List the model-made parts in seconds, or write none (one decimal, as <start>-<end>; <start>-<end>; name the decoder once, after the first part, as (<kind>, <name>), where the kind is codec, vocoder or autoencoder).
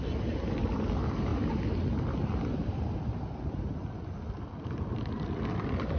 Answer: none